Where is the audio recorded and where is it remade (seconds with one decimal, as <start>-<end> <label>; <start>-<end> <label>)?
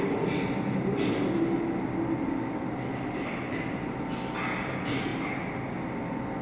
0.0-6.4 recorded